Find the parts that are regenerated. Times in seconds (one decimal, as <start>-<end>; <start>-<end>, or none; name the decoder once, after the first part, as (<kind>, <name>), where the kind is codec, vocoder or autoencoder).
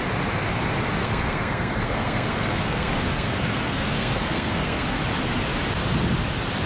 1.0-5.0 (codec, SNAC)